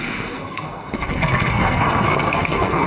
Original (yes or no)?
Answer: no